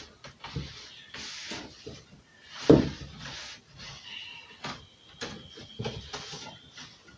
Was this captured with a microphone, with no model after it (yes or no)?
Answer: yes